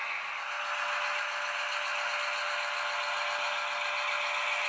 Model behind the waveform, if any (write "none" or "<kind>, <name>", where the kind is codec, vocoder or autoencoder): none